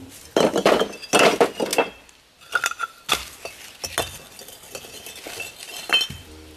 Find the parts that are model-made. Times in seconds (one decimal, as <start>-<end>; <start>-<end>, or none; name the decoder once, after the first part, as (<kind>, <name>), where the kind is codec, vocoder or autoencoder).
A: none